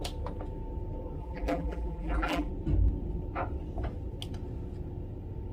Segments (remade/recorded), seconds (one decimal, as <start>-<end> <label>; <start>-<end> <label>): 0.0-1.2 recorded; 1.2-2.5 remade; 2.5-5.5 recorded